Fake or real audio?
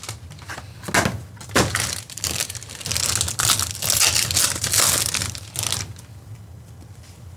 real